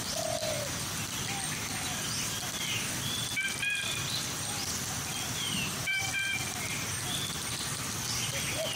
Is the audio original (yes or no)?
yes